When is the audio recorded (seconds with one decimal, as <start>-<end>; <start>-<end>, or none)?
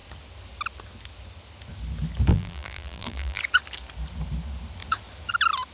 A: 0.0-2.3; 3.4-5.7